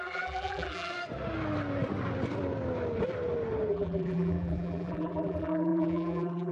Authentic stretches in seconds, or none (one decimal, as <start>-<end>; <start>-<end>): 0.9-3.7